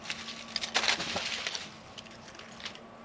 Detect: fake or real real